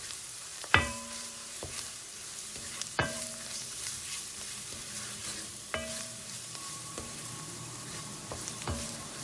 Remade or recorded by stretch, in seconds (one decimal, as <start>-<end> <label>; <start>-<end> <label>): 0.0-5.2 remade; 5.2-5.9 recorded; 5.9-9.2 remade